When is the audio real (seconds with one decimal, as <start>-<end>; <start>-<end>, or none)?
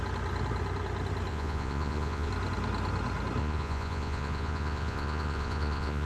0.0-1.3; 2.3-3.4